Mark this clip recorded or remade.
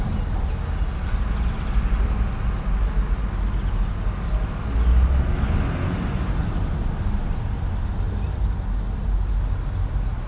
recorded